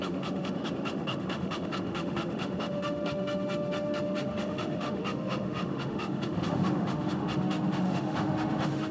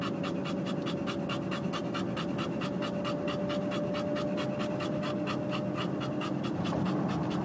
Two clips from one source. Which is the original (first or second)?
second